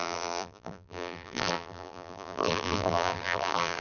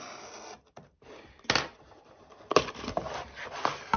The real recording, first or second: second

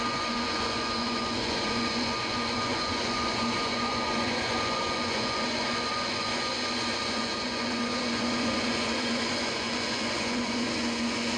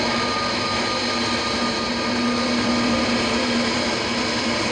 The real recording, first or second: second